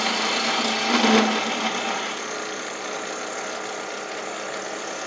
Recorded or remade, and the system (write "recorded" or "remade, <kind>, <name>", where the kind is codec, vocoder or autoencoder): recorded